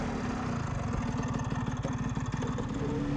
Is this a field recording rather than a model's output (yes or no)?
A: yes